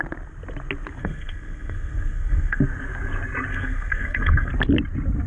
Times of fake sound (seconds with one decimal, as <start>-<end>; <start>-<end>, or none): 1.0-2.6; 3.5-4.5